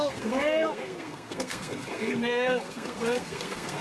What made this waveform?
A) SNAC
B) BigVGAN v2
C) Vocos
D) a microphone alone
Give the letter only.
A